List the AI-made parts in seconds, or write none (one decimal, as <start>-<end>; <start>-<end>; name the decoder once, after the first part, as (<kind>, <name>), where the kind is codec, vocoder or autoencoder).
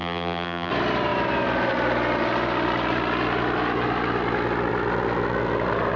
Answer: 0.0-0.7 (vocoder, BigVGAN v2)